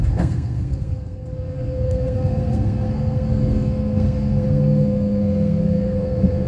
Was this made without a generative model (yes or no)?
no